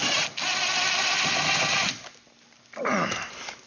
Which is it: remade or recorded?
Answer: recorded